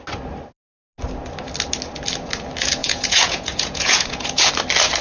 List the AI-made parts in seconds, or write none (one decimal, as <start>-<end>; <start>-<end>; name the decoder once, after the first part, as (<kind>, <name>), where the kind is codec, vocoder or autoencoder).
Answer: 2.8-4.5 (vocoder, Vocos)